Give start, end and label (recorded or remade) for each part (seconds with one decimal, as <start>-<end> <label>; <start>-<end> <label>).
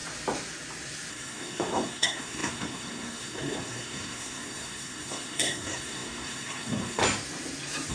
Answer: 0.0-1.1 recorded; 1.1-7.0 remade; 7.0-7.9 recorded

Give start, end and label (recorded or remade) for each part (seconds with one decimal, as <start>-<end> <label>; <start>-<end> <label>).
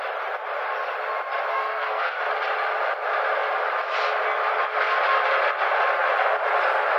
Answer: 0.0-1.5 recorded; 1.5-2.2 remade; 2.2-7.0 recorded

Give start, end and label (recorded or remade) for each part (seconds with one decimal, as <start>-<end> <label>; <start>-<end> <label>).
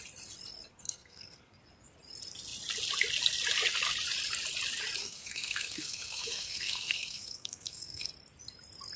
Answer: 0.0-0.7 recorded; 0.7-1.6 remade; 1.6-5.0 recorded; 5.0-8.1 remade; 8.1-9.0 recorded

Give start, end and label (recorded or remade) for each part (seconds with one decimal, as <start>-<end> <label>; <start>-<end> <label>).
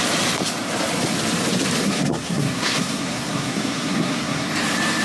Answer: 0.0-1.8 recorded; 1.8-4.5 remade; 4.5-5.0 recorded